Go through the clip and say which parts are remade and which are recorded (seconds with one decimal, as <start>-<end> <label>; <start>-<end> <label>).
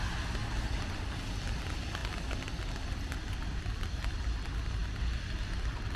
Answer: 0.0-6.0 recorded